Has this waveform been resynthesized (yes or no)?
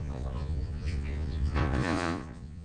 yes